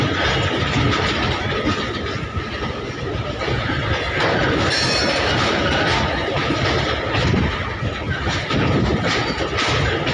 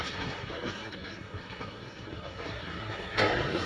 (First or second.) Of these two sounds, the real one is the first